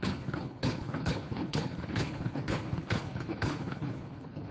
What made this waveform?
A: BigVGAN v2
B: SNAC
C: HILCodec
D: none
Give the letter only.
C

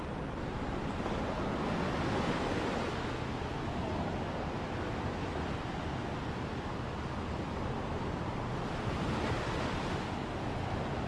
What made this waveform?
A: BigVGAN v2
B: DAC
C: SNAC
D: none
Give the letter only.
D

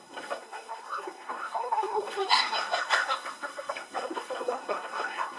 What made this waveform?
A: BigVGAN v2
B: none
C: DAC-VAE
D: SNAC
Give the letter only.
D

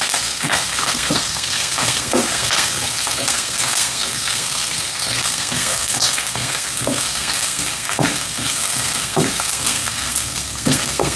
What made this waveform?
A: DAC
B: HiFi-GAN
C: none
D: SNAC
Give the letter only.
D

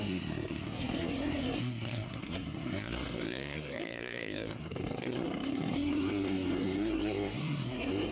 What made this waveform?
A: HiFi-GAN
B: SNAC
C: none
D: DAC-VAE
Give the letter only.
B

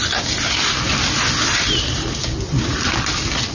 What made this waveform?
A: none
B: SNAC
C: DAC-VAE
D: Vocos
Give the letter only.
A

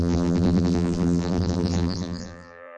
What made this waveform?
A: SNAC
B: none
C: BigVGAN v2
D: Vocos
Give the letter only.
C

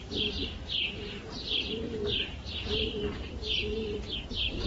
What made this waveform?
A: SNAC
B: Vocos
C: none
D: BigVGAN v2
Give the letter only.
D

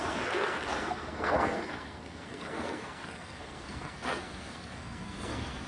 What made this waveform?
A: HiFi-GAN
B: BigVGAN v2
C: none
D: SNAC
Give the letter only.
D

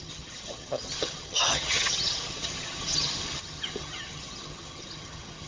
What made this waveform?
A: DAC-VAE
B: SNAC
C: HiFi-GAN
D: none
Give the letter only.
C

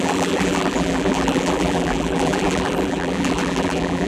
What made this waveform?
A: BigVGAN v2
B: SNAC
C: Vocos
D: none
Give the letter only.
A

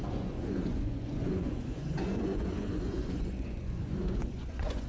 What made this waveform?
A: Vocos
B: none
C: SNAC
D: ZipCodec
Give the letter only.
A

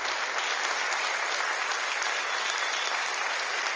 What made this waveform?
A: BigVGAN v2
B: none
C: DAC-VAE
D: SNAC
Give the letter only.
B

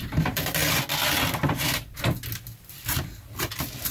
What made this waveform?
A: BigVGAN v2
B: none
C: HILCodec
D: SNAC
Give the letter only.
B